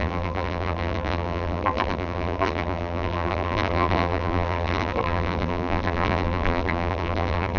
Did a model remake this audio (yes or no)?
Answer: yes